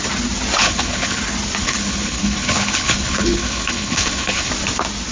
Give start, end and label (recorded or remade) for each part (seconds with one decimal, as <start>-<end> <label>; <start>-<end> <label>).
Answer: 0.0-0.6 recorded; 0.6-1.2 remade; 1.2-1.6 recorded; 1.6-4.5 remade; 4.5-5.1 recorded

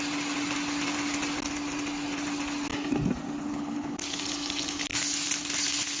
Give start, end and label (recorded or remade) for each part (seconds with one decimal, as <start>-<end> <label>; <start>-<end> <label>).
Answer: 0.0-3.4 recorded; 3.4-4.2 remade; 4.2-6.0 recorded

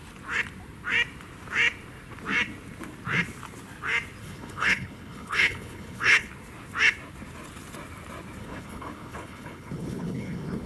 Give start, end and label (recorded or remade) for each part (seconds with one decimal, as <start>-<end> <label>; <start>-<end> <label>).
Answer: 0.0-4.2 recorded; 4.2-6.3 remade; 6.3-8.4 recorded; 8.4-10.7 remade

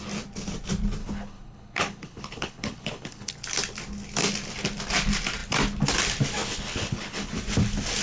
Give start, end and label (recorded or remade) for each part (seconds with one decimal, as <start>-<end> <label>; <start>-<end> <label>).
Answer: 0.0-1.0 recorded; 1.0-3.3 remade; 3.3-6.4 recorded; 6.4-7.3 remade; 7.3-8.0 recorded

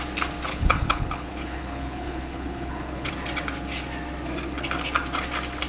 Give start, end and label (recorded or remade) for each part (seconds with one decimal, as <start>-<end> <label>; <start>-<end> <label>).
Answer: 0.0-0.5 recorded; 0.5-3.1 remade; 3.1-5.7 recorded